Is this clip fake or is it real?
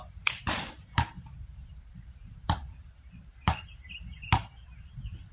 fake